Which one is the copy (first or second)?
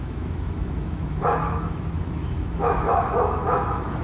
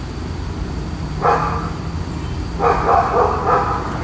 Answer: first